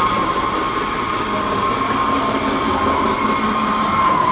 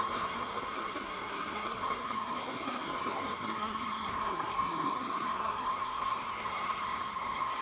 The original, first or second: first